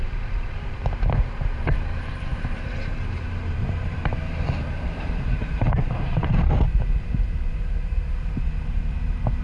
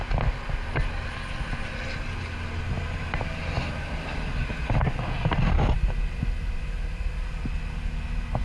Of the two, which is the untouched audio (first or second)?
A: second